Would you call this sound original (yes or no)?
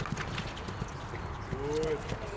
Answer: yes